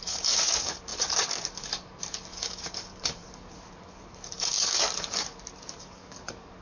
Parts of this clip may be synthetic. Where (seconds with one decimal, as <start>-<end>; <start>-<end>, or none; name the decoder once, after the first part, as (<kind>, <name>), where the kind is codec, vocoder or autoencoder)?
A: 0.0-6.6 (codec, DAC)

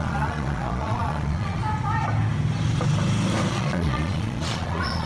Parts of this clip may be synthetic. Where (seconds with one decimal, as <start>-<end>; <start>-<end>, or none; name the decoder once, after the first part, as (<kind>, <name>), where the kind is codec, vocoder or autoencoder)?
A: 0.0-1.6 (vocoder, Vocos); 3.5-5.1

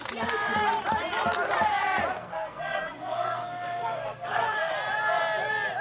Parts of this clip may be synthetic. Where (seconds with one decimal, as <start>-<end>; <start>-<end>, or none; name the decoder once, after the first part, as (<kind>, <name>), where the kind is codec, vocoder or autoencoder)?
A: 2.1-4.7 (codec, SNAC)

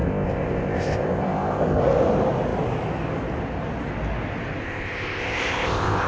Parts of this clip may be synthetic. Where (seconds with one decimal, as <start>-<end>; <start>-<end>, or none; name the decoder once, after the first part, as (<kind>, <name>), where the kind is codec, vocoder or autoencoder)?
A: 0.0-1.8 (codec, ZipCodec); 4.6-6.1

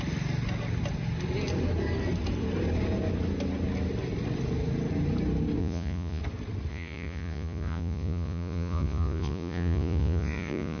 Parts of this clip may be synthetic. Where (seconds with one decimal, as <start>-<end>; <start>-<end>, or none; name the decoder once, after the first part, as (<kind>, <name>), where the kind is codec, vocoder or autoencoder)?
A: 5.6-6.2 (vocoder, Vocos); 6.7-10.8

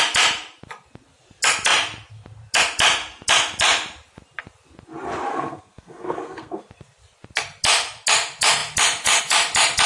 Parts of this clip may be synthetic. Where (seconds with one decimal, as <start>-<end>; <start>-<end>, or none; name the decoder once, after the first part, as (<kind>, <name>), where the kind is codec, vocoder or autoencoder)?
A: 5.3-6.6 (codec, SNAC)

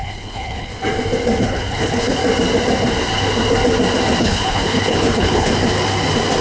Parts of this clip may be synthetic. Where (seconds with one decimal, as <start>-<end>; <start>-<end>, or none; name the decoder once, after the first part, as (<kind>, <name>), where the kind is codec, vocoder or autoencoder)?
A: 0.0-0.7 (codec, HILCodec); 1.4-2.2; 4.2-5.5

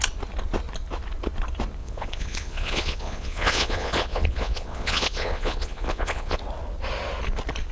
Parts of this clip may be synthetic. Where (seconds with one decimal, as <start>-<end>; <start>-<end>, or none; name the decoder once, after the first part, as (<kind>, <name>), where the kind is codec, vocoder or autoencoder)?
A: 1.8-6.4 (vocoder, Vocos)